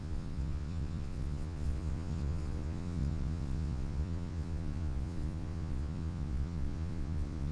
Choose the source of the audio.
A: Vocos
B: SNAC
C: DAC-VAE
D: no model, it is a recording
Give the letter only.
A